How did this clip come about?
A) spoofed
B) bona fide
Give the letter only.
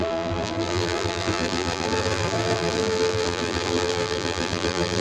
A